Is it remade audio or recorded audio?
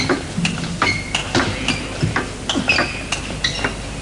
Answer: recorded